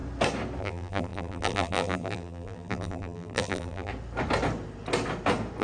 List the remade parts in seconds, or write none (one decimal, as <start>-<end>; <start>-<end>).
0.6-3.9